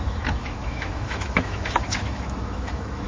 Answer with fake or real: fake